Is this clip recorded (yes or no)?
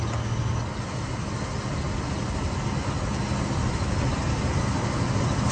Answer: yes